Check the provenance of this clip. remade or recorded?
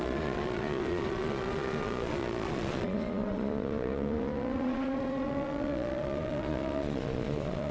remade